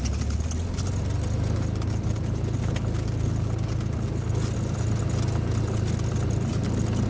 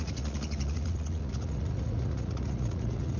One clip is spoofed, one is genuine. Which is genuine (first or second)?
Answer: first